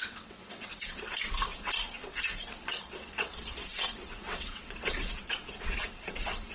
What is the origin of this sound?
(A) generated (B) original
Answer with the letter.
A